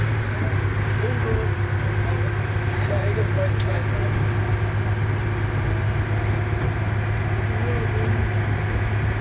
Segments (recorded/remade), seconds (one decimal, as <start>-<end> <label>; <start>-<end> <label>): 0.0-9.2 recorded